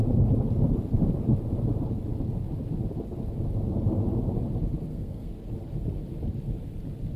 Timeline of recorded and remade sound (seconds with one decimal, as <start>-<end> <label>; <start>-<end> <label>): 0.0-4.9 recorded; 4.9-5.4 remade; 5.4-7.2 recorded

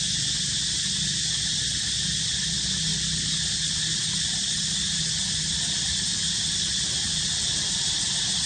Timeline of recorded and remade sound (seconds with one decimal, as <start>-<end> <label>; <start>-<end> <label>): 0.0-8.5 recorded

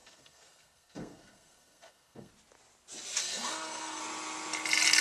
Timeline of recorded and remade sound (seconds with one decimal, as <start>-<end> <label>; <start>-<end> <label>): 0.0-2.3 remade; 2.3-3.2 recorded; 3.2-4.0 remade; 4.0-5.0 recorded

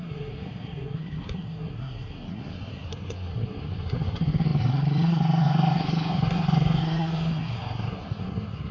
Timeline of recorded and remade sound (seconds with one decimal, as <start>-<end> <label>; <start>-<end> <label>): 0.0-8.7 remade

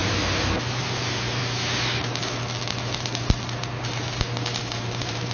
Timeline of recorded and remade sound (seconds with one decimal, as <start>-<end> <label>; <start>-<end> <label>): 0.0-1.4 remade; 1.4-4.6 recorded; 4.6-5.3 remade

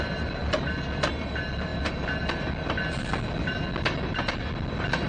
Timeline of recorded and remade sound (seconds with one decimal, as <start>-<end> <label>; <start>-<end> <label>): 0.0-5.1 recorded